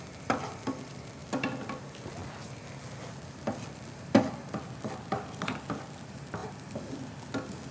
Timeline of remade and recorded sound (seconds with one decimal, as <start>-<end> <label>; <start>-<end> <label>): 0.0-7.7 recorded